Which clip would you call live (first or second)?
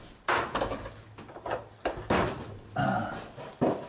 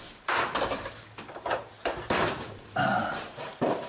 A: first